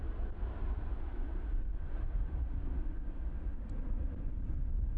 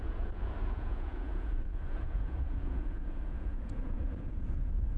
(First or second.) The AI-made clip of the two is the second